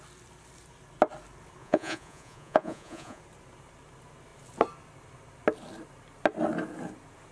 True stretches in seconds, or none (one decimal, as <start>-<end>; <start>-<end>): 0.0-1.6; 3.2-7.3

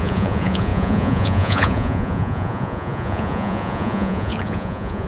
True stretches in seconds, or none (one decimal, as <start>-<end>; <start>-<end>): none

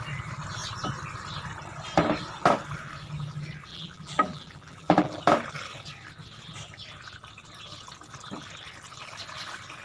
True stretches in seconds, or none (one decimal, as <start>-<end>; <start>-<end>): 0.0-3.7; 5.2-9.8

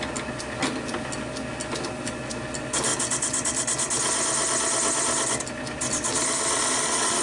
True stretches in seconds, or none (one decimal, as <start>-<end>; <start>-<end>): 0.0-7.2

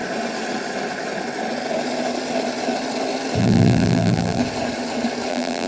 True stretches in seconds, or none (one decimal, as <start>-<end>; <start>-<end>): 0.0-3.4; 4.4-5.3

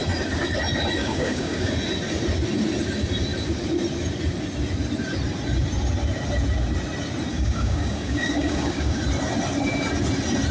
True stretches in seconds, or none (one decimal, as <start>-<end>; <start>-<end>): 0.0-1.0; 1.7-7.3; 9.0-10.5

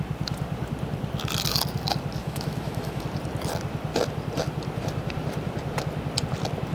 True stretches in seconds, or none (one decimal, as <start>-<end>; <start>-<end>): 0.0-2.2; 3.0-6.7